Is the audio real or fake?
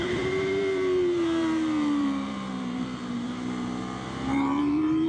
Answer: fake